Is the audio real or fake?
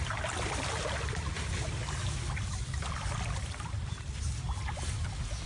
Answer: real